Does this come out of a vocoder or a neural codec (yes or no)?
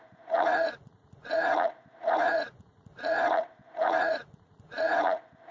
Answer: yes